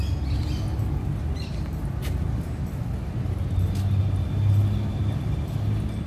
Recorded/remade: recorded